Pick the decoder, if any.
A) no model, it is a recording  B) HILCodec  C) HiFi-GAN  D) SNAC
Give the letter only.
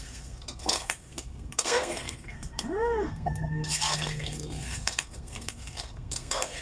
D